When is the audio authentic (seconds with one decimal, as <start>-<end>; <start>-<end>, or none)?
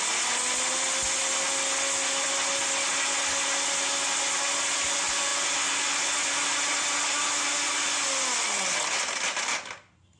0.0-10.2